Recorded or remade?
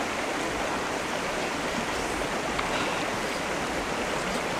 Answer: recorded